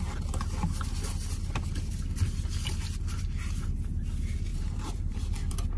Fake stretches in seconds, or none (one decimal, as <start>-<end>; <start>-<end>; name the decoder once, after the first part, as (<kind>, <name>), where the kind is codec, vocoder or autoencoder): 4.5-5.3 (vocoder, BigVGAN v2)